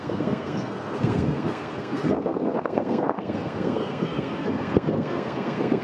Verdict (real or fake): fake